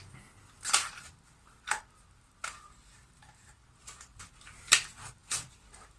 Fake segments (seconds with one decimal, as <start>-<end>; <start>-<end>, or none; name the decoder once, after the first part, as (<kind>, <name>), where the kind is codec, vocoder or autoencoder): none